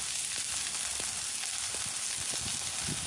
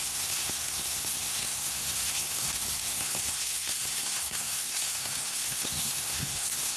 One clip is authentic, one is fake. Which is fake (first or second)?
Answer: second